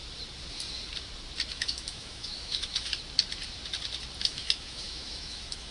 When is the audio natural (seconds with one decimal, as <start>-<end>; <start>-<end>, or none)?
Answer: 0.0-1.5; 2.9-4.2